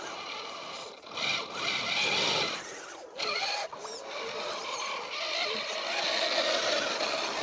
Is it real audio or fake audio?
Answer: real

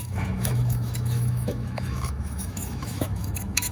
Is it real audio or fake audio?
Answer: fake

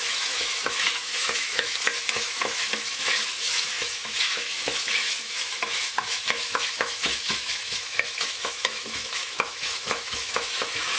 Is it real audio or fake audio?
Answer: fake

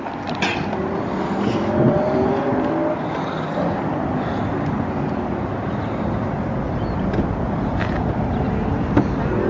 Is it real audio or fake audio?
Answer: real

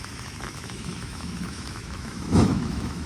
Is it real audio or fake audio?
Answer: fake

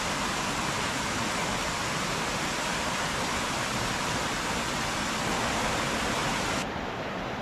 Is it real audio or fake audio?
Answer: real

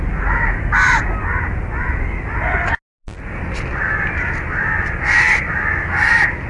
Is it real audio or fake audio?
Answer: real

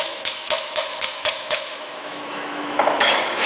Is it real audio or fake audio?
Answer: fake